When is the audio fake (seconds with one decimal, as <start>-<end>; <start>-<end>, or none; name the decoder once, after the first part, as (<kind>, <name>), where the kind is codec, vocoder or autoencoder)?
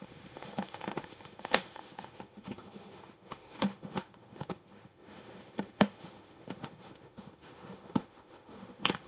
0.0-9.1 (autoencoder, DAC-VAE)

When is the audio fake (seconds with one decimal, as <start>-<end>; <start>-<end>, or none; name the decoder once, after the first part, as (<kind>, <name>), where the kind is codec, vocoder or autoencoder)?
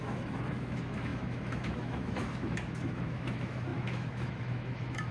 0.0-5.1 (autoencoder, DAC-VAE)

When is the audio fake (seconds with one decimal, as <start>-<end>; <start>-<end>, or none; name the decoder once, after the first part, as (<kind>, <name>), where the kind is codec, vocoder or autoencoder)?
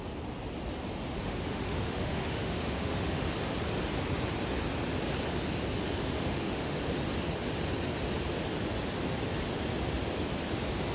1.2-3.4 (autoencoder, DAC-VAE); 6.0-6.8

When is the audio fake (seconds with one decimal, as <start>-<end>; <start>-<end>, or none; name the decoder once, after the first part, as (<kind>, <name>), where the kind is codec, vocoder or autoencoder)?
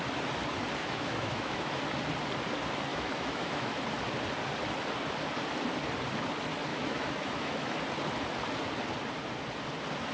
0.8-1.8 (autoencoder, DAC-VAE); 2.9-3.8; 6.7-7.8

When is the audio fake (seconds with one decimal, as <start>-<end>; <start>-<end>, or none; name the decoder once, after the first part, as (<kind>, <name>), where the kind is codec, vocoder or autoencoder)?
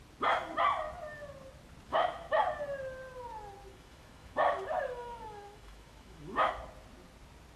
1.9-2.4 (autoencoder, DAC-VAE); 3.7-6.5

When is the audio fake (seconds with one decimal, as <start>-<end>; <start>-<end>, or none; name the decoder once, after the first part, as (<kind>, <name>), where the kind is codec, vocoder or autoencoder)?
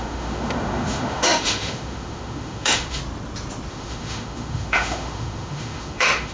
0.0-3.0 (autoencoder, DAC-VAE); 3.7-6.3